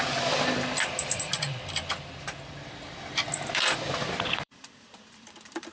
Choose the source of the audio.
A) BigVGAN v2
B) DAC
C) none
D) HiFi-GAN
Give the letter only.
A